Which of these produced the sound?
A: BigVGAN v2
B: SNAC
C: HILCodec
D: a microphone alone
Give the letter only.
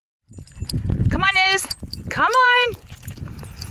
A